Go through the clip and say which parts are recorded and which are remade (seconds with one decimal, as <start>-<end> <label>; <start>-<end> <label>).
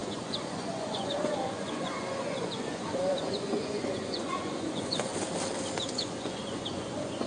0.0-5.1 remade; 5.1-5.8 recorded; 5.8-7.3 remade